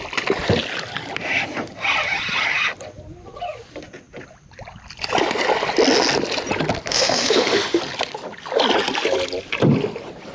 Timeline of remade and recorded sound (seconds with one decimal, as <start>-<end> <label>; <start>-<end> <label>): 0.0-6.9 recorded; 6.9-7.8 remade; 7.8-10.3 recorded

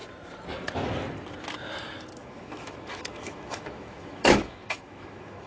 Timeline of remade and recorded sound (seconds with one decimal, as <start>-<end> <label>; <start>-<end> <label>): 0.0-2.2 recorded; 2.2-5.5 remade

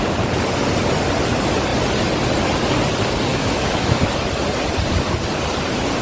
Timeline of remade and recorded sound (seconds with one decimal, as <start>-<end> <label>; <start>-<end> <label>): 0.0-3.3 recorded; 3.3-4.0 remade; 4.0-6.0 recorded

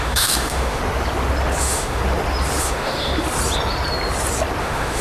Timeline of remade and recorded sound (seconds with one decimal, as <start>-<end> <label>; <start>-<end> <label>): 0.0-0.8 remade; 0.8-1.6 recorded; 1.6-2.0 remade; 2.0-2.6 recorded; 2.6-3.1 remade; 3.1-4.6 recorded; 4.6-5.0 remade

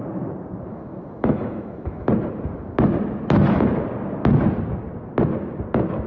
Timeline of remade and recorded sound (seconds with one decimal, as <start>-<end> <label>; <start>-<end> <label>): 0.0-0.7 recorded; 0.7-2.1 remade; 2.1-6.1 recorded

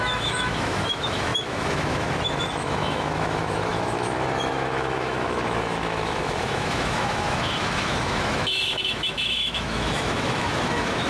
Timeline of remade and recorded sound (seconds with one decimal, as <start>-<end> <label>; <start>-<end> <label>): 0.0-11.1 remade

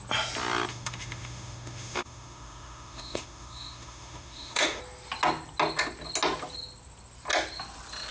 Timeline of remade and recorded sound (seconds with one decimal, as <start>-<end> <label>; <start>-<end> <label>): 0.0-0.7 recorded; 0.7-4.8 remade; 4.8-8.1 recorded

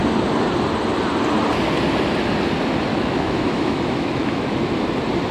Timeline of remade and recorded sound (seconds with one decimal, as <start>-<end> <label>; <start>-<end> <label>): 0.0-2.9 recorded; 2.9-4.5 remade; 4.5-5.3 recorded